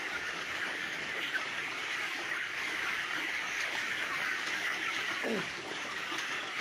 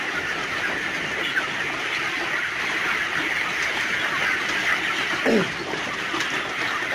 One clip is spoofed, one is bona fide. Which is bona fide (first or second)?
second